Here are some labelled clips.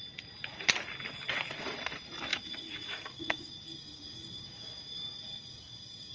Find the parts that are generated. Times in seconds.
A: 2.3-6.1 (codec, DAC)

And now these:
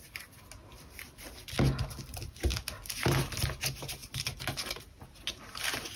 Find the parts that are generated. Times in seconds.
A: none